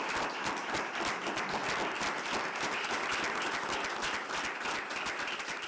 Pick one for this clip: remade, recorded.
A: recorded